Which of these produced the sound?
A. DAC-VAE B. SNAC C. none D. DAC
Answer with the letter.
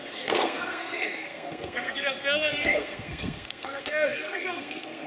B